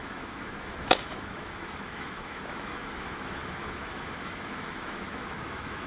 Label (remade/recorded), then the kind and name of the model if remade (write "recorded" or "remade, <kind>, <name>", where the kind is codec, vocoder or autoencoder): remade, autoencoder, DAC-VAE